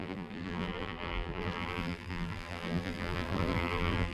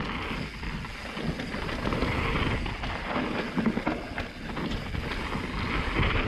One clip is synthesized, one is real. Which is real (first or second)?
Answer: second